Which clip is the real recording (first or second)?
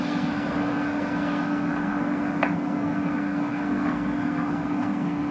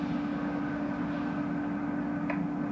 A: second